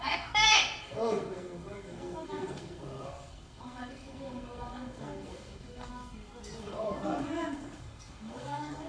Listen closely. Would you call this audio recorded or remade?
remade